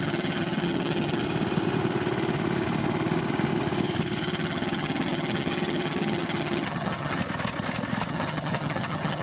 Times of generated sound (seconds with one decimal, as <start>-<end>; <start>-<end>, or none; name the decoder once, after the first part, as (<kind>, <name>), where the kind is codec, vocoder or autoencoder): 0.0-1.2 (vocoder, HiFi-GAN); 4.2-7.2; 8.1-9.2